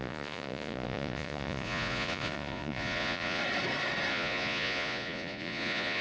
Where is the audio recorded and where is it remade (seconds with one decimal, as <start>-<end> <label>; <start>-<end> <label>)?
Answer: 0.0-3.4 remade; 3.4-4.1 recorded; 4.1-6.0 remade